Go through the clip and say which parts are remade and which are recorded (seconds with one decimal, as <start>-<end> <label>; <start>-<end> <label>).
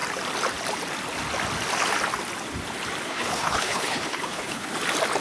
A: 0.0-3.1 recorded; 3.1-4.7 remade; 4.7-5.2 recorded